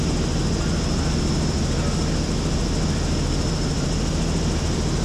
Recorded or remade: recorded